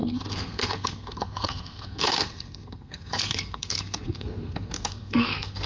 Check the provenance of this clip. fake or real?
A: fake